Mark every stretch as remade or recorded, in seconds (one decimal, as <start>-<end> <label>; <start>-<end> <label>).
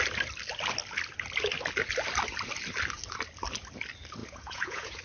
0.0-4.2 recorded; 4.2-5.0 remade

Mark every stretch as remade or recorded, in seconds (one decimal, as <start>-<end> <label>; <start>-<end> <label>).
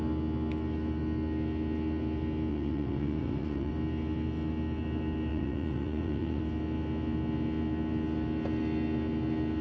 0.0-2.5 recorded; 2.5-3.7 remade; 3.7-5.3 recorded; 5.3-6.4 remade; 6.4-9.6 recorded